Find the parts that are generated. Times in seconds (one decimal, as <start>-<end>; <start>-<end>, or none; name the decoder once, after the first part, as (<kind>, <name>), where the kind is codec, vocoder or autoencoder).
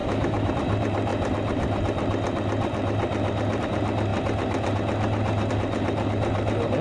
0.0-0.5 (autoencoder, DAC-VAE)